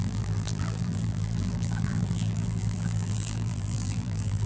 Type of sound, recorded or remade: remade